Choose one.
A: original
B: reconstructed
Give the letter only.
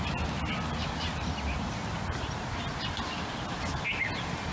A